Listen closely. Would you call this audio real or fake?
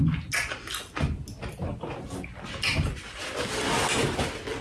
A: real